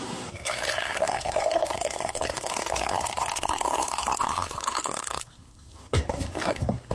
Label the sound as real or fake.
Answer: fake